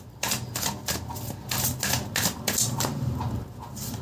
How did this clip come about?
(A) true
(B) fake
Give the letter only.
A